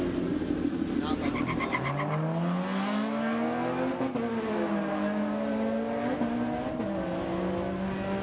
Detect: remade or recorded recorded